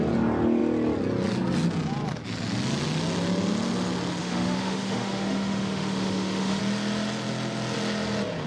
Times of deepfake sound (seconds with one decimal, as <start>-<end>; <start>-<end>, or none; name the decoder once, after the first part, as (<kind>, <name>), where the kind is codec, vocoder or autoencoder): 4.2-6.6 (autoencoder, DAC-VAE)